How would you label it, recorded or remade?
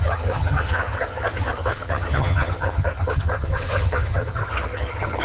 remade